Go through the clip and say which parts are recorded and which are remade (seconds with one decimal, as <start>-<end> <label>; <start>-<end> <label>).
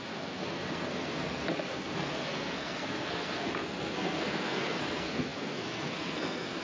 0.0-6.6 remade